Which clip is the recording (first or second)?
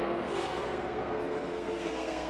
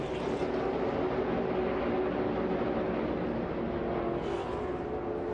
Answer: second